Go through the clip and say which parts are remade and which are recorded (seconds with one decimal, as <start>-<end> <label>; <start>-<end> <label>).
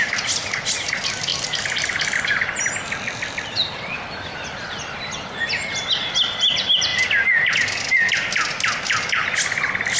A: 0.0-10.0 recorded